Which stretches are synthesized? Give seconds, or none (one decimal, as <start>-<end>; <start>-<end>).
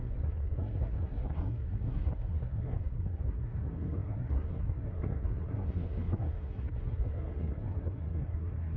0.0-8.8